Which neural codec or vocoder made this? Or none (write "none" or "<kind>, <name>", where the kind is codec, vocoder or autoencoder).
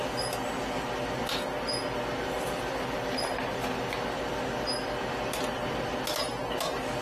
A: none